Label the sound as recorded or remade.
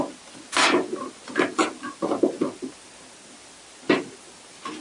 recorded